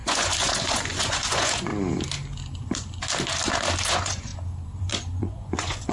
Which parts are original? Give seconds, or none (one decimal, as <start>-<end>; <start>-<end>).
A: 1.7-3.9; 4.3-4.8